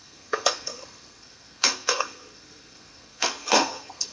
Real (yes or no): no